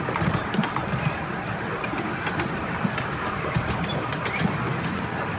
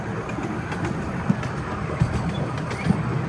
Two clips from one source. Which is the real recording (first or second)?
second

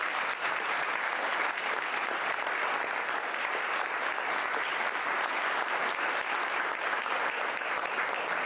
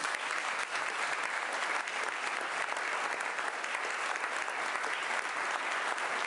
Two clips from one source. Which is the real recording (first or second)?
second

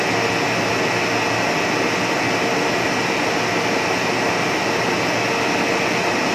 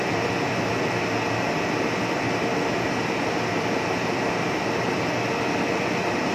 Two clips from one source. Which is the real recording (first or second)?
first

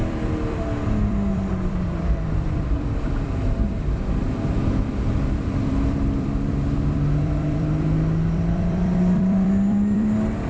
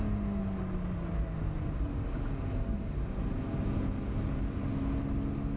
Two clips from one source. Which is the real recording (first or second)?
second